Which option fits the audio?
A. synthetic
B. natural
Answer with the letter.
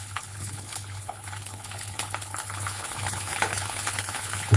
A